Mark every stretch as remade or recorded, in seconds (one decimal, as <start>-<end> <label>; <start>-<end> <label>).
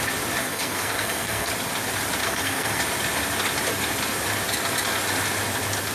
0.0-0.4 recorded; 0.4-1.5 remade; 1.5-2.2 recorded; 2.2-2.8 remade; 2.8-5.9 recorded